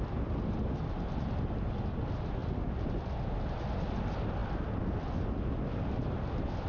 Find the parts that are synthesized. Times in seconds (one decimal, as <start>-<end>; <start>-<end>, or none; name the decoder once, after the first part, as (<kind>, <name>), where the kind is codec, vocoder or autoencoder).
none